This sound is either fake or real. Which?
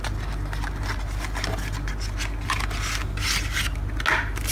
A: real